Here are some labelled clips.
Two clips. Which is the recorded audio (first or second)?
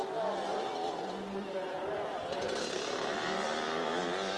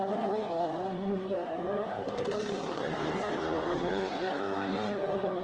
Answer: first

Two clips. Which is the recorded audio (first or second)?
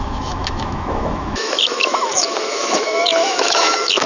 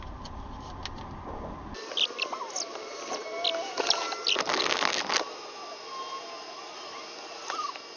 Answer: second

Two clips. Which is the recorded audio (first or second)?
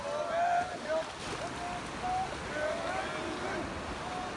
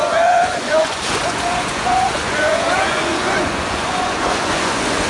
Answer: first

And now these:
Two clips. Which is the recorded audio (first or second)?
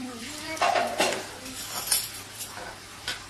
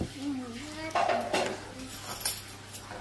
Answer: second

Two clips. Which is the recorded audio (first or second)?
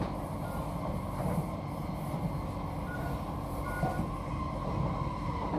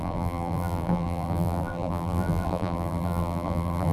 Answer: first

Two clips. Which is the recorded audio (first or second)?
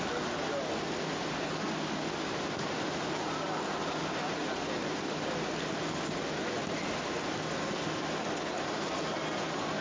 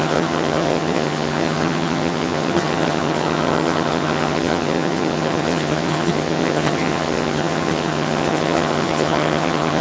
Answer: first